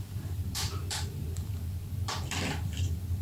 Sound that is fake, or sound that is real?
fake